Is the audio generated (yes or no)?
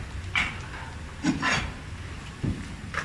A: no